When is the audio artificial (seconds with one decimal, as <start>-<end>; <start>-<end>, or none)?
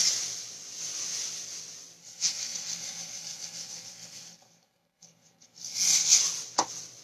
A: 2.0-6.2